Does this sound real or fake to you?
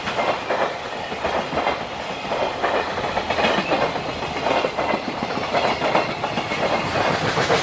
real